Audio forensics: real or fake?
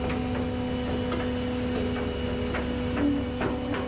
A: real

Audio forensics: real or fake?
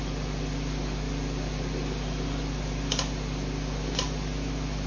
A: real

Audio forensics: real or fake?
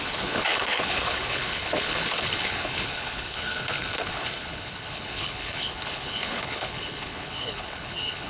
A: fake